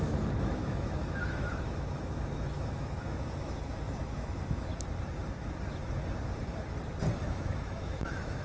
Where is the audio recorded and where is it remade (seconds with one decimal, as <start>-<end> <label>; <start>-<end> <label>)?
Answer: 0.0-4.7 remade; 4.7-7.2 recorded; 7.2-8.4 remade